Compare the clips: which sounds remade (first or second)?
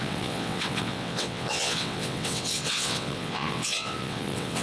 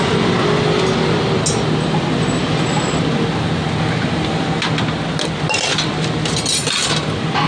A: first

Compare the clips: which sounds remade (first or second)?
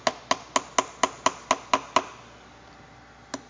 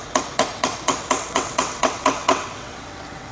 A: second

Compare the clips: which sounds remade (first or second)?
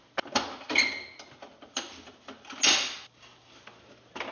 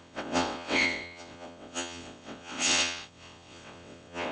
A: second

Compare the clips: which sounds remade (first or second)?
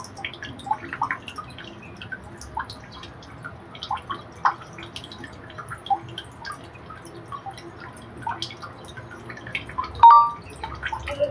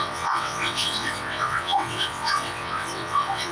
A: second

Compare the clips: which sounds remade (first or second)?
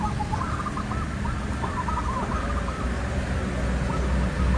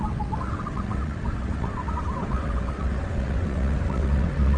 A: second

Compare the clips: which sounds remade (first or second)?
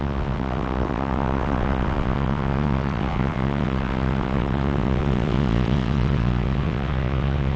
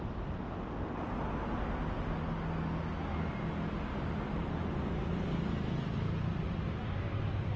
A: first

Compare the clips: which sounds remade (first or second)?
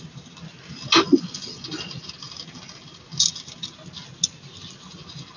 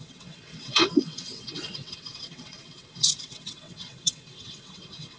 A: second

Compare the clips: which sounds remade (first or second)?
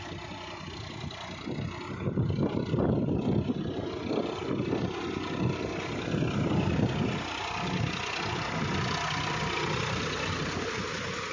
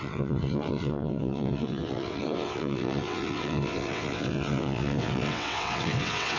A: second